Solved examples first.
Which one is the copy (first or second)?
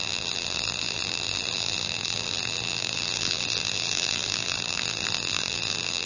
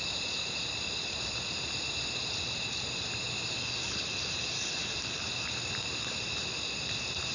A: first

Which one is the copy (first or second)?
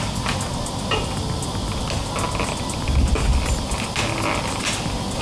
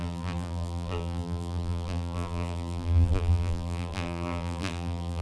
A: second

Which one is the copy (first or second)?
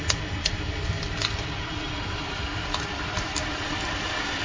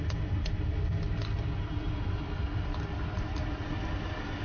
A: first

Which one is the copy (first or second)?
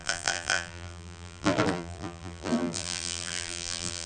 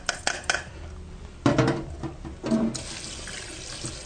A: first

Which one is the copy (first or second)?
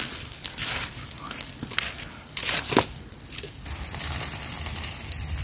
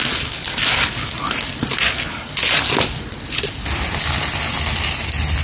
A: first